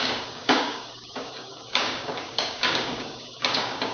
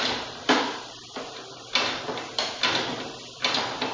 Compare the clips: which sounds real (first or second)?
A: second